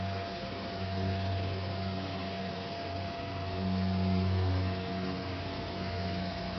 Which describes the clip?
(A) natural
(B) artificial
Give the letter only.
B